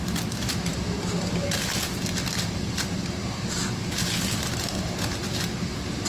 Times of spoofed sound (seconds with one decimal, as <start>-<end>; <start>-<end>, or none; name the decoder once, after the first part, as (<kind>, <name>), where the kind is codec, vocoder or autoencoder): none